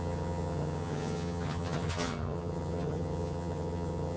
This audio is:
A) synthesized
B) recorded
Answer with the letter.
A